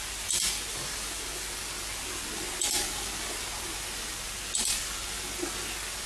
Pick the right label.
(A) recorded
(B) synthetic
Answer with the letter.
A